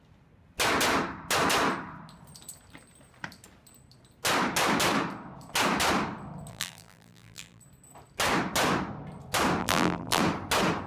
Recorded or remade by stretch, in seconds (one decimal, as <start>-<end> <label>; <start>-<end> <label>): 0.0-6.5 recorded; 6.5-7.6 remade; 7.6-9.6 recorded; 9.6-10.2 remade; 10.2-10.9 recorded